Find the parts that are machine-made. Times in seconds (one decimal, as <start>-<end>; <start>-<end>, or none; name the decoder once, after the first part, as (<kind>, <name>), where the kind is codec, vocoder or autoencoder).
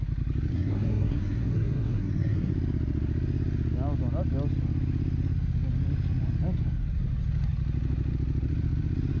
0.5-2.5 (codec, SNAC)